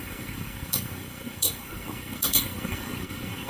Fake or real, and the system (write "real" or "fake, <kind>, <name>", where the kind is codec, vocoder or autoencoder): fake, codec, SNAC